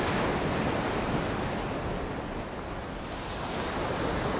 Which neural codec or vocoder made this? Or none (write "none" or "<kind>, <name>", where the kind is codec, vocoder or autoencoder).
none